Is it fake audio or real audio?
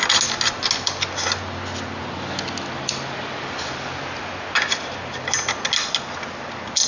real